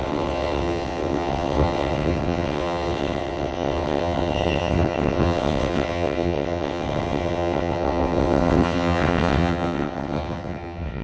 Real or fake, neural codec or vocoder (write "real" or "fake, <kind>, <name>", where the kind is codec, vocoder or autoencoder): fake, vocoder, WaveNeXt